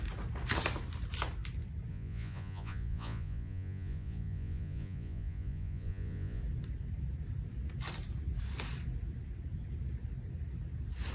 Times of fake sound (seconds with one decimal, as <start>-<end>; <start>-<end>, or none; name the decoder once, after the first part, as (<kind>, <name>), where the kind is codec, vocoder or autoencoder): 1.9-6.4 (vocoder, Vocos)